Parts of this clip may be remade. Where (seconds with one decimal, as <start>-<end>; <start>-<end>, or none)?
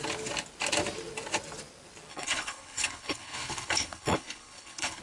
2.1-5.0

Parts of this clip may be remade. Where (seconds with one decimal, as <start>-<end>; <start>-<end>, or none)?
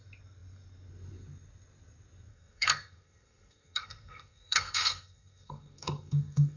2.3-6.6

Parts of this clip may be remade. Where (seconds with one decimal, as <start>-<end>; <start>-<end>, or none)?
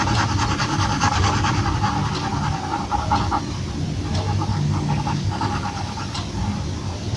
0.6-1.3; 4.5-6.0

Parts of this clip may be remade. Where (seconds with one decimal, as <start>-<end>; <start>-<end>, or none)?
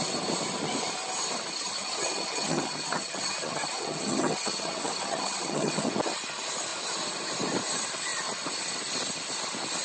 1.6-5.9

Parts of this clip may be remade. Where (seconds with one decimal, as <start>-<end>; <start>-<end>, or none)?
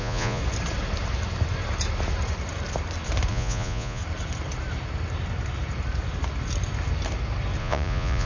0.0-0.4; 3.3-4.0; 7.6-8.3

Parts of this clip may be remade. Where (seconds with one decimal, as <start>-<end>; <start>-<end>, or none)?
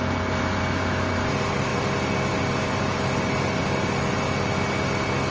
none